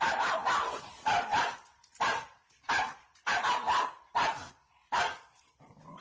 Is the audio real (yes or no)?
yes